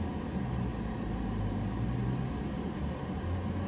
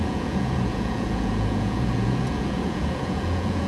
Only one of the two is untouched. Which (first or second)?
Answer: first